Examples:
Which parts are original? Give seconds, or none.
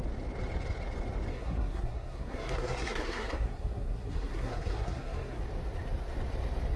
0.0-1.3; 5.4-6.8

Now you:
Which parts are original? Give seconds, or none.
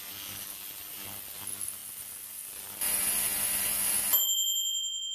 0.0-5.1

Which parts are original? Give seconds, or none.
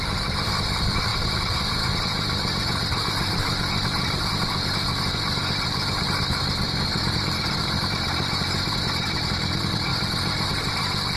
none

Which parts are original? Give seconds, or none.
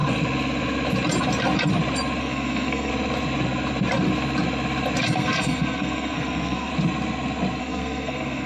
0.0-2.2; 2.9-5.0; 6.7-7.6